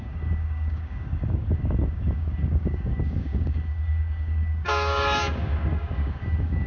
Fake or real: fake